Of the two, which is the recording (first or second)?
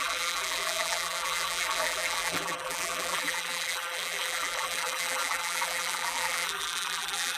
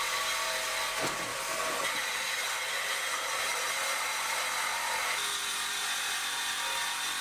second